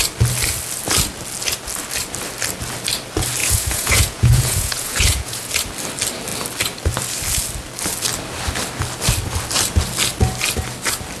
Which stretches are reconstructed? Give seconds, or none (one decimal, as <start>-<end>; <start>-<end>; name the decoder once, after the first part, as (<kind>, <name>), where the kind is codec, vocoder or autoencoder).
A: 3.4-5.5 (vocoder, Vocos)